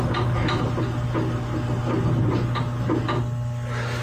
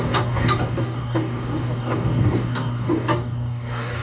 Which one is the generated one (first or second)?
second